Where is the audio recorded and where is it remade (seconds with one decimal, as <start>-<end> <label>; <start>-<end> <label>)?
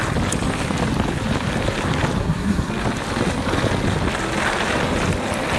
0.0-2.2 recorded; 2.2-2.7 remade; 2.7-5.6 recorded